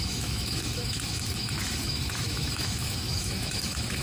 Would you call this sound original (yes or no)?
no